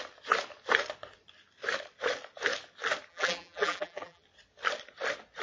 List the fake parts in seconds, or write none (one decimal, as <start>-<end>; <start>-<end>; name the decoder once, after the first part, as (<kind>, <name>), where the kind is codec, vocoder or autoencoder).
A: 3.1-4.2 (vocoder, BigVGAN v2)